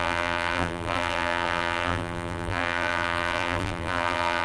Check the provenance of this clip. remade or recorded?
remade